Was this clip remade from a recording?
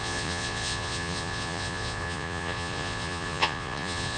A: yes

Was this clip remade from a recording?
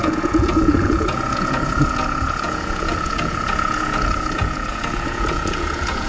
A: yes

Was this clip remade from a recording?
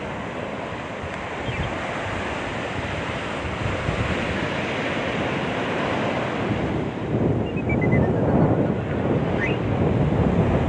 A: no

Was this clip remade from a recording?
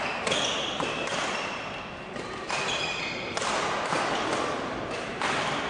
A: no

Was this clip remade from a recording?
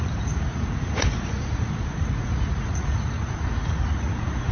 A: yes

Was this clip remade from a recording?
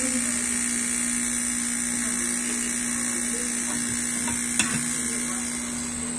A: no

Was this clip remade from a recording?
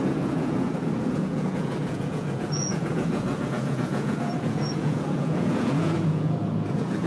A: yes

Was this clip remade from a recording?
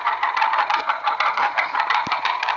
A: no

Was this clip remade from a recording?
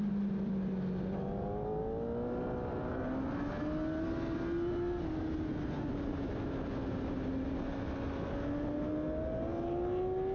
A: no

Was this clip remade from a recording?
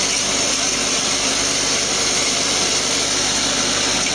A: no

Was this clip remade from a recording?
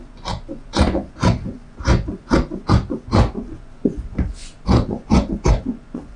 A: yes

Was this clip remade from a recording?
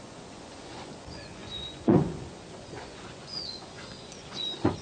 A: yes